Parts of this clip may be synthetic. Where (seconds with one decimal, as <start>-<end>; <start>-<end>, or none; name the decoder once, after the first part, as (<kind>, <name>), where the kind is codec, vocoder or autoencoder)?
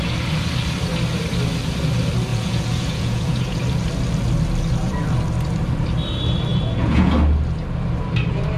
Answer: 2.3-3.6 (vocoder, Vocos); 6.5-7.1